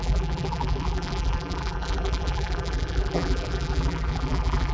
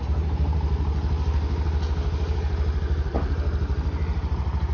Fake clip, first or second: first